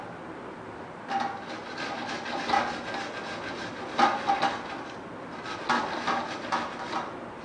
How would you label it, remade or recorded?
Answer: recorded